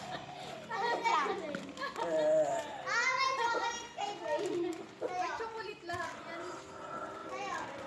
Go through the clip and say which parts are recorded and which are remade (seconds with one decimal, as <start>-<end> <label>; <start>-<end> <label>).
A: 0.0-7.2 recorded; 7.2-7.9 remade